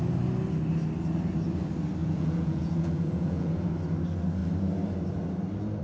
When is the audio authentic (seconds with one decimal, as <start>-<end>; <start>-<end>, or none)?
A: 0.0-2.0; 3.7-5.8